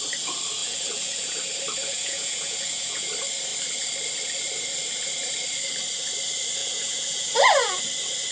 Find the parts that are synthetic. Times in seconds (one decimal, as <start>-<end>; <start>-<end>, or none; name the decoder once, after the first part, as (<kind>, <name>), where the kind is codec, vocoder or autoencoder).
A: 0.6-1.4 (vocoder, Vocos); 1.8-3.1; 6.6-7.8